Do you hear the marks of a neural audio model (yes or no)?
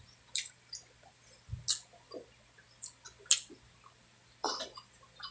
no